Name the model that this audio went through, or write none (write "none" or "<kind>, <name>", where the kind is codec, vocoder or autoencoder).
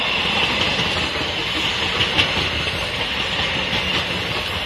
none